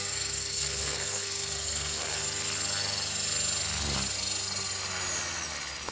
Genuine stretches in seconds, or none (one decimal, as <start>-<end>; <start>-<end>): 2.2-5.9